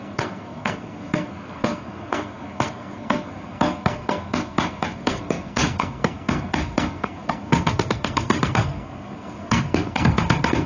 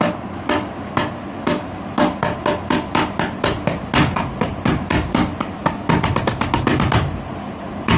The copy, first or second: first